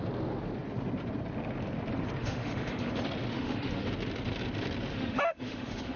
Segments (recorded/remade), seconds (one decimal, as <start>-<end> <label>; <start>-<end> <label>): 0.0-2.2 recorded; 2.2-2.9 remade; 2.9-3.3 recorded; 3.3-3.9 remade; 3.9-4.9 recorded; 4.9-6.0 remade